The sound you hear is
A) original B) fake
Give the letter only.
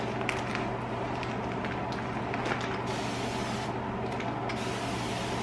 A